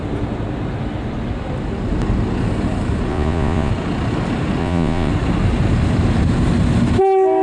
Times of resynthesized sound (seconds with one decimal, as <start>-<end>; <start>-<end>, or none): 3.1-3.7; 4.6-5.1